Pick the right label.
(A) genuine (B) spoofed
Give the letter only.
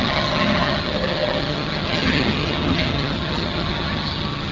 B